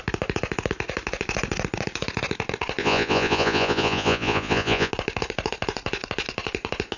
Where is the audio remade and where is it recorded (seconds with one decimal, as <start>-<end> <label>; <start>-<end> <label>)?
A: 0.0-2.8 recorded; 2.8-4.9 remade; 4.9-7.0 recorded